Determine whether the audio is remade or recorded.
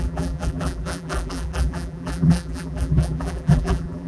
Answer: remade